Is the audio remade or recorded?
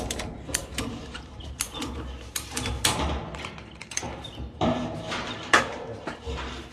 remade